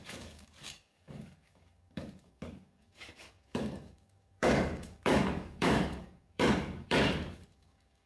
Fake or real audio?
fake